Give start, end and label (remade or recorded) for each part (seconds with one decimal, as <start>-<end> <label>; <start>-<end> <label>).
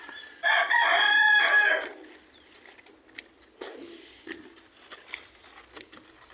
0.0-6.3 recorded